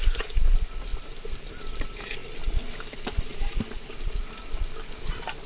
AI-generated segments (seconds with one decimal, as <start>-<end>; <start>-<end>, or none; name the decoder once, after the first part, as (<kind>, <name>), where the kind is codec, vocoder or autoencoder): 0.0-5.5 (vocoder, BigVGAN v2)